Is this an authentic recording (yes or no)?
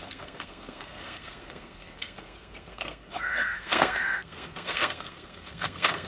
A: no